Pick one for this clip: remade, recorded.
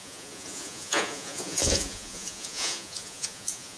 remade